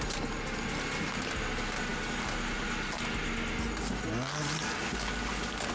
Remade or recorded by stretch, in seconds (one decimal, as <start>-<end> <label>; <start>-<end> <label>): 0.0-5.7 recorded